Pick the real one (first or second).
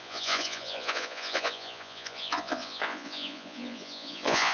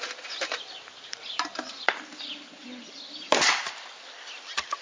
second